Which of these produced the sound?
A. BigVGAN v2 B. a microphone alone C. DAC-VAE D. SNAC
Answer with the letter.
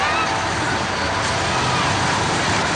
B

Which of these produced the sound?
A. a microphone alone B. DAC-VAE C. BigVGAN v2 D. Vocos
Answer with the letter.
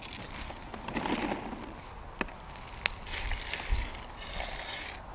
A